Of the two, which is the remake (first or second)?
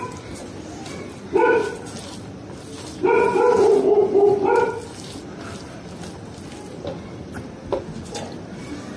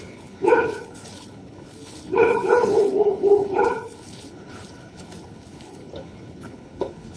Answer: second